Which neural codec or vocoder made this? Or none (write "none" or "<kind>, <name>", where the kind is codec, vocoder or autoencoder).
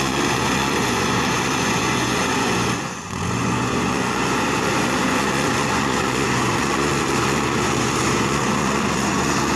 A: vocoder, Vocos